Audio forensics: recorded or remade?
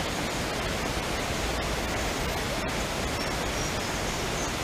recorded